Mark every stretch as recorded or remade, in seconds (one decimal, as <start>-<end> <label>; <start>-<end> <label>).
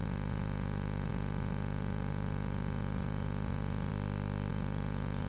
0.0-3.9 remade; 3.9-4.5 recorded; 4.5-5.3 remade